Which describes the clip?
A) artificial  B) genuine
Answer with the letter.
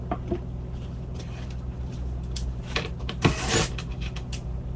B